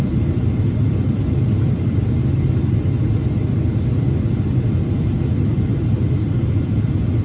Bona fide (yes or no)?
yes